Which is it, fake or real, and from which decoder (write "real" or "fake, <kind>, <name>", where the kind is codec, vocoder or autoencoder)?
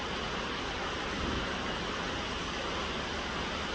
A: real